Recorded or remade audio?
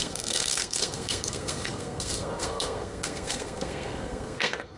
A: remade